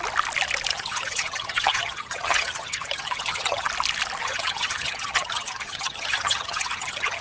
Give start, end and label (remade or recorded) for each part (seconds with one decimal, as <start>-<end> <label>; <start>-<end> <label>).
0.0-0.7 recorded; 0.7-3.7 remade; 3.7-4.2 recorded; 4.2-7.2 remade